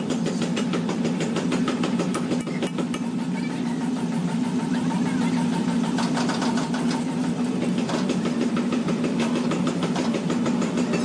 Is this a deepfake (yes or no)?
no